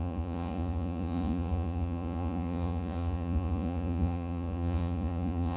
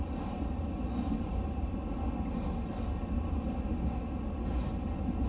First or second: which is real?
second